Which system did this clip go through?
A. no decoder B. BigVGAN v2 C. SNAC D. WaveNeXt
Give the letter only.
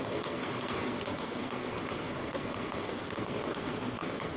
C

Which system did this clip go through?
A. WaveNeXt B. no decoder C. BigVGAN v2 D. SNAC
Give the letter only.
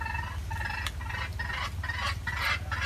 B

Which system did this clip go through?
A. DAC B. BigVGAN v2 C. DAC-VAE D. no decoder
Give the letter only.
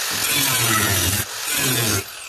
D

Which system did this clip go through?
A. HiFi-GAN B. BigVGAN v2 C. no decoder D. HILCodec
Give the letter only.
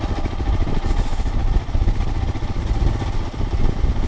C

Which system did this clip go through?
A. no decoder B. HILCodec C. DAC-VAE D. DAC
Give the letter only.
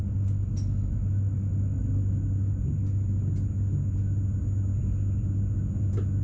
A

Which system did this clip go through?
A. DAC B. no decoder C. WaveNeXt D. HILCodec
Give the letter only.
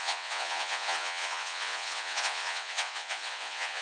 C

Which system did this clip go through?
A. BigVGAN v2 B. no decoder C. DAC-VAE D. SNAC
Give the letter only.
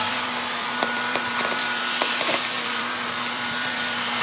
A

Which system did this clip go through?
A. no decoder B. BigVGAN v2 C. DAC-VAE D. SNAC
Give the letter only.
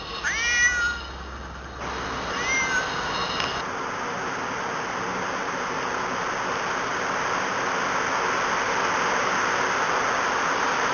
A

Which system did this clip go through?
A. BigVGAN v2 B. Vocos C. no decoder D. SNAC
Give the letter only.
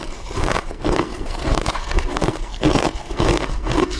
D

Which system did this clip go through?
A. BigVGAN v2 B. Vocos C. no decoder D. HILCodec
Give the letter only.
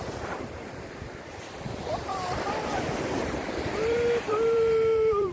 A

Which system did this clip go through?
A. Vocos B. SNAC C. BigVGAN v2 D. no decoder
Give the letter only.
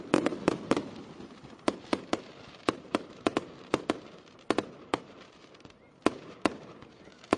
C